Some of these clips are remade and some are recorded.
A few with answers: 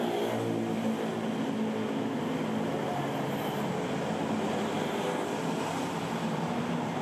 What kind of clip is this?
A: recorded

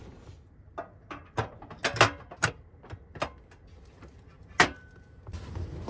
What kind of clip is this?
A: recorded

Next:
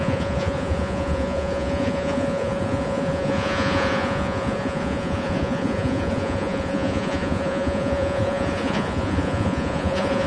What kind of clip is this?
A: remade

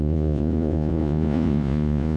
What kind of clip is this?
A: remade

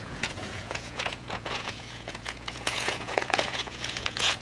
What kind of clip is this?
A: remade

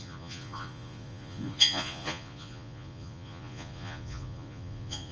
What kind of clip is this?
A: remade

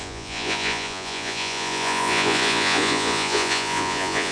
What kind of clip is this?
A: remade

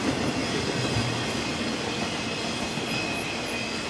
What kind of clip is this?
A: recorded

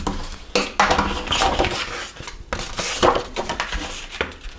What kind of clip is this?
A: recorded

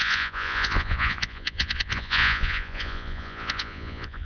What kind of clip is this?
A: remade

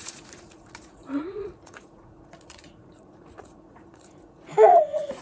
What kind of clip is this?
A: remade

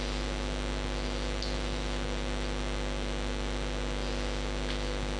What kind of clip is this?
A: recorded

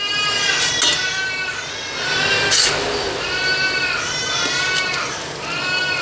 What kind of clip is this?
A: recorded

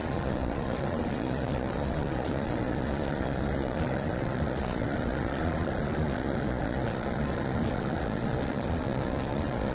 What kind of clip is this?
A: remade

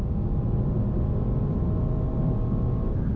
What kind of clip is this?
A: recorded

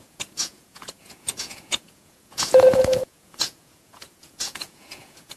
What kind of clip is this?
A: remade